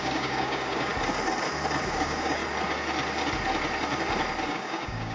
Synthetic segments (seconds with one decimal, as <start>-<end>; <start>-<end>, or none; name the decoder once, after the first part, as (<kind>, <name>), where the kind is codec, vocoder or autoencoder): 0.0-0.9 (codec, DAC); 1.8-2.4; 4.5-5.1